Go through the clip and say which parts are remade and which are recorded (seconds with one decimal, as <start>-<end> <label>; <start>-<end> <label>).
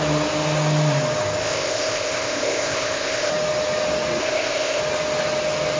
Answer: 0.0-1.4 recorded; 1.4-3.3 remade; 3.3-4.2 recorded; 4.2-4.8 remade; 4.8-5.8 recorded